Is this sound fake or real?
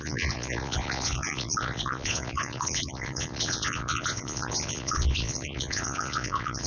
fake